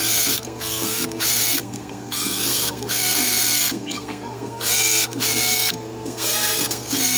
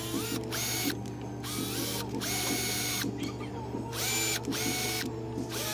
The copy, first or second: first